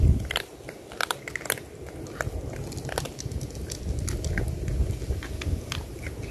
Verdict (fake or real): real